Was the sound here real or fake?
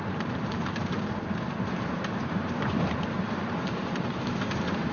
fake